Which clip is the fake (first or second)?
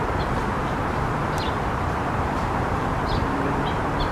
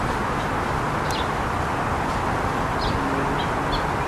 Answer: first